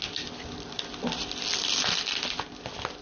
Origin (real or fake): real